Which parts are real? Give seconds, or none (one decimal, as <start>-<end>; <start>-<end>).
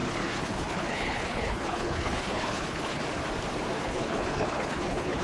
3.0-3.8